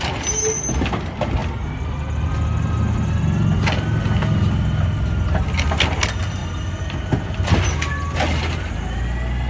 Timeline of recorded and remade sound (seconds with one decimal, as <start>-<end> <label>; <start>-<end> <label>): 0.0-9.5 recorded